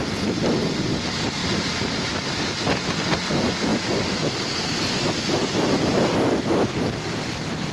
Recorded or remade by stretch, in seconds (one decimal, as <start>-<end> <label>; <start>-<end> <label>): 0.0-1.4 remade; 1.4-3.3 recorded; 3.3-7.7 remade